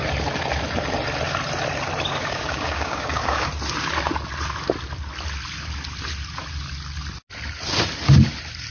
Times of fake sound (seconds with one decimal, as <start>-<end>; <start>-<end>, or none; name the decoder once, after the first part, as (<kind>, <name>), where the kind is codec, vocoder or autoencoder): 2.2-3.5 (codec, DAC)

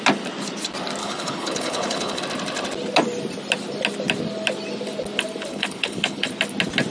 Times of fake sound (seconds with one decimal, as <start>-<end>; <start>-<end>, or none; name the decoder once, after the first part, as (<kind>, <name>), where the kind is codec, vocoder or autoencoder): 1.0-2.2 (codec, HILCodec); 5.5-6.3

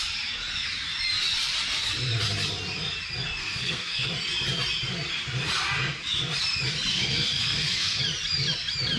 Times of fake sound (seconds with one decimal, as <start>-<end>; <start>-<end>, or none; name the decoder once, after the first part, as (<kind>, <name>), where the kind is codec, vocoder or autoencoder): 3.4-4.1 (codec, SNAC); 6.9-8.0

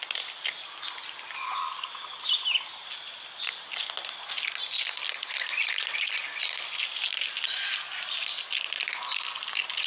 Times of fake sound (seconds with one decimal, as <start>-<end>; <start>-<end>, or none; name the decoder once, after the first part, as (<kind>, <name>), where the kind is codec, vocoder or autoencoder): none

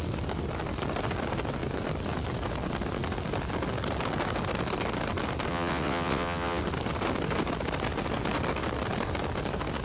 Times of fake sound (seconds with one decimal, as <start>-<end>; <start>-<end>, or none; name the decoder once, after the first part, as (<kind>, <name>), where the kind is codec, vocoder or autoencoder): 5.5-6.6 (vocoder, WaveNeXt)